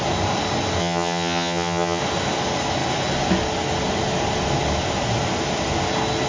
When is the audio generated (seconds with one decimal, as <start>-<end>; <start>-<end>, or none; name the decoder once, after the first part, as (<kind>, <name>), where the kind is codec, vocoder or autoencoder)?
0.8-2.0 (vocoder, HiFi-GAN)